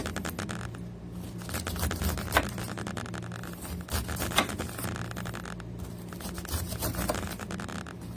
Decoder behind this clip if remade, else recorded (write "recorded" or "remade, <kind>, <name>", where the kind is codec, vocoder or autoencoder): recorded